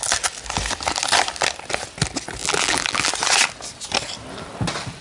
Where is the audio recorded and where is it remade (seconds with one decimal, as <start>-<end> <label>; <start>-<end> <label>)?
0.0-2.4 recorded; 2.4-3.1 remade; 3.1-5.0 recorded